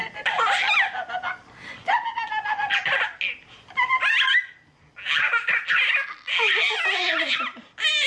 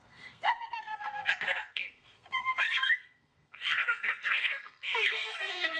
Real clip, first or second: first